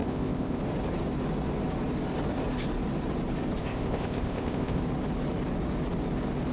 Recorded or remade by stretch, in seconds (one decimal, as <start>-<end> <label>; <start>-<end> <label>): 0.0-0.6 remade; 0.6-3.6 recorded; 3.6-4.8 remade; 4.8-6.5 recorded